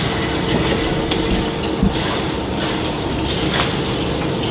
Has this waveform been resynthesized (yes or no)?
no